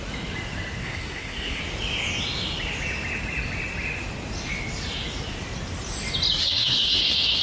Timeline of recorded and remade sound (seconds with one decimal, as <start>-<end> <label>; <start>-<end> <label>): 0.0-0.8 recorded; 0.8-1.6 remade; 1.6-6.4 recorded; 6.4-7.4 remade